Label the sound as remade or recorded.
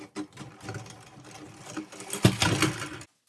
recorded